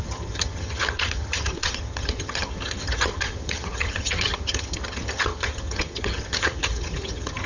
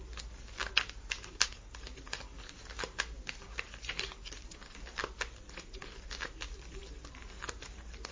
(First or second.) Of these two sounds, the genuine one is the second